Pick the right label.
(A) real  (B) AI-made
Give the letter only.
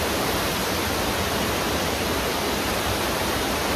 A